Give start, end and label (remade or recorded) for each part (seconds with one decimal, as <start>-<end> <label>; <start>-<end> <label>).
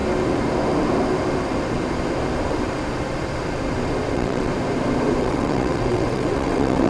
0.0-4.1 recorded; 4.1-4.5 remade; 4.5-5.2 recorded; 5.2-6.9 remade